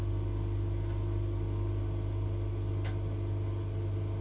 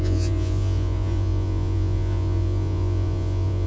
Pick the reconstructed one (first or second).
second